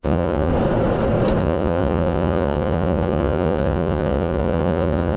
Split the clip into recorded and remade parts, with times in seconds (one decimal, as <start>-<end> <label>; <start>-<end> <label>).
0.0-0.5 remade; 0.5-1.4 recorded; 1.4-5.2 remade